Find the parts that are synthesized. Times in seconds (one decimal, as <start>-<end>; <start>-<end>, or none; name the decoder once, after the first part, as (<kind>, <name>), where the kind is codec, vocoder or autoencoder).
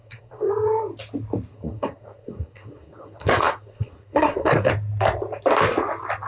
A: 0.0-0.5 (codec, SNAC); 1.5-4.7